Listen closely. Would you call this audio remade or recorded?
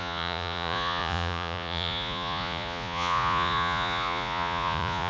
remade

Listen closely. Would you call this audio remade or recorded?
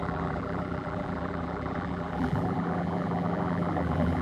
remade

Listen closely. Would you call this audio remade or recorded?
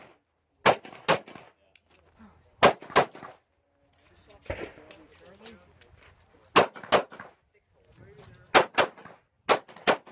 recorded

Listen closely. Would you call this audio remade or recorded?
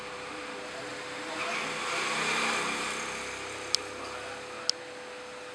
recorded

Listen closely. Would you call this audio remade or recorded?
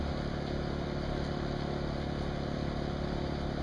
recorded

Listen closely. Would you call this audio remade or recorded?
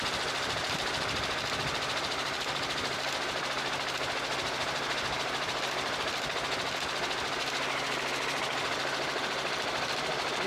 recorded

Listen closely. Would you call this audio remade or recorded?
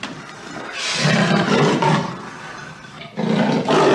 remade